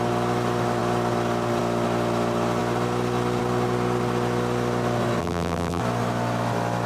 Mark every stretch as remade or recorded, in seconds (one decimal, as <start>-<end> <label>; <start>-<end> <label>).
0.0-5.2 recorded; 5.2-5.8 remade; 5.8-6.9 recorded